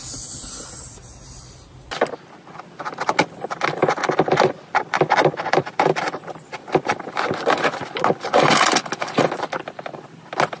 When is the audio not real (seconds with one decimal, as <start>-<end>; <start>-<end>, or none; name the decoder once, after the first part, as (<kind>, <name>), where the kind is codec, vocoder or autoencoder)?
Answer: 3.8-6.2 (vocoder, BigVGAN v2)